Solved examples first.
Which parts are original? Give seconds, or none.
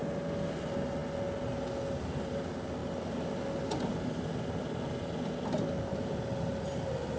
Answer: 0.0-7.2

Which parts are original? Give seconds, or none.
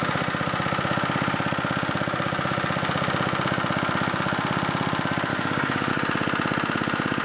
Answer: 0.0-5.3; 5.9-7.2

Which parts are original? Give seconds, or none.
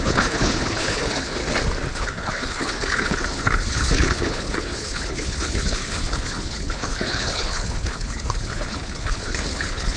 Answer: 1.4-1.9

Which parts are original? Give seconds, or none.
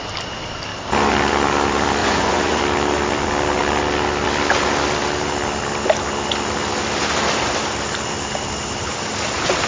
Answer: 0.0-2.0; 2.6-9.7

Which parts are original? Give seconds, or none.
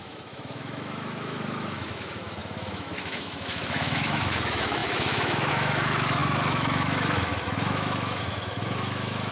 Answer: none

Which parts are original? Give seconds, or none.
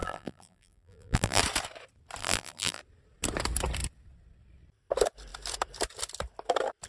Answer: 1.4-2.2; 2.8-6.9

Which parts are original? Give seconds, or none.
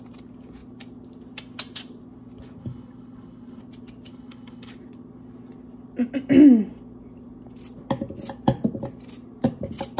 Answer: 0.0-2.6; 3.6-4.1; 4.7-10.0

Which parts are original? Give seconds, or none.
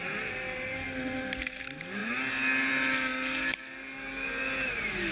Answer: 0.0-5.1